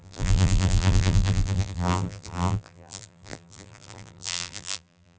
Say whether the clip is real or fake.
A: fake